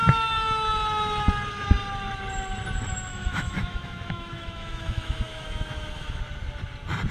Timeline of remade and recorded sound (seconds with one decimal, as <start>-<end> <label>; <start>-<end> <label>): 0.0-3.1 recorded; 3.1-6.2 remade; 6.2-7.1 recorded